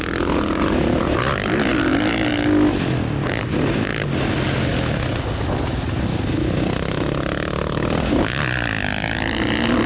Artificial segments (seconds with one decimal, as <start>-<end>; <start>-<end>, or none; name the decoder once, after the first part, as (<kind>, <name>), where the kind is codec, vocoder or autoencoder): none